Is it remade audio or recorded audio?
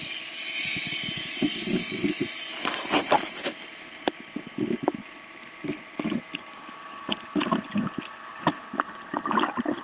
recorded